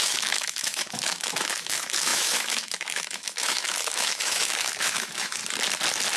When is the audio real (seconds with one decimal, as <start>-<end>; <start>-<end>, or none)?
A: 5.4-6.2